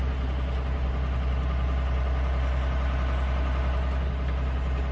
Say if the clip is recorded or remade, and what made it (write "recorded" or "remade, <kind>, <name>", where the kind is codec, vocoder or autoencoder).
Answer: recorded